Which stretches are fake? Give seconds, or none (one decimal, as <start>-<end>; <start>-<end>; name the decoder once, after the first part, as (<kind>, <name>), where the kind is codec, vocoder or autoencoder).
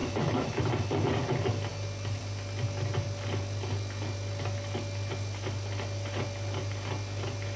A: 0.0-0.6 (autoencoder, DAC-VAE)